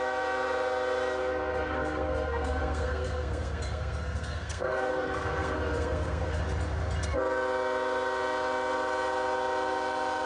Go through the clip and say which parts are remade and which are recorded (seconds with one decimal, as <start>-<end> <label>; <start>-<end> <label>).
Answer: 0.0-1.2 recorded; 1.2-6.4 remade; 6.4-10.3 recorded